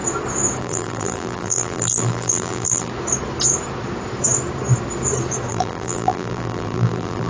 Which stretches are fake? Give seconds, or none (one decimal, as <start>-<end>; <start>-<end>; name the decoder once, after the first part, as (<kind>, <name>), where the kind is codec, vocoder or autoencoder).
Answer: 0.6-2.9 (vocoder, BigVGAN v2); 5.5-7.3